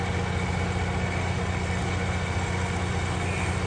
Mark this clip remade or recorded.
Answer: recorded